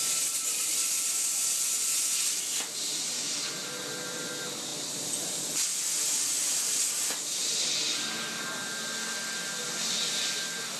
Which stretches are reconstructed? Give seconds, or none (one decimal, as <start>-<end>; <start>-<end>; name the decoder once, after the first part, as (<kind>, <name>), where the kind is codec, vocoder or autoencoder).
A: none

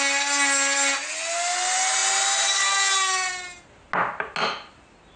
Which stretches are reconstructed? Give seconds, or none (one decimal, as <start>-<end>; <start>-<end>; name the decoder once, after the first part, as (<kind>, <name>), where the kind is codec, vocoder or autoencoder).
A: none